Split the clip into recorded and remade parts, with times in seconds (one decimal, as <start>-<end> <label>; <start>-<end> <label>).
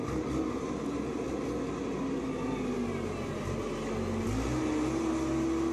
0.0-5.7 recorded